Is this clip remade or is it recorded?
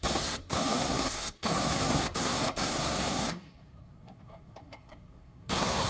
remade